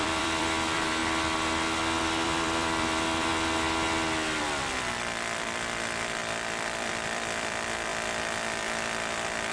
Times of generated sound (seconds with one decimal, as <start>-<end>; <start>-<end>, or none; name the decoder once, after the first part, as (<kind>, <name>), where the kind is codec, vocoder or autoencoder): 0.0-1.0 (vocoder, BigVGAN v2); 2.0-3.3; 4.4-7.9; 9.1-9.5